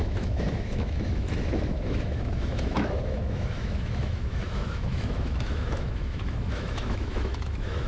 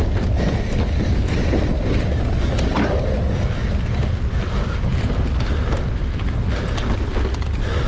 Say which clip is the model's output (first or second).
first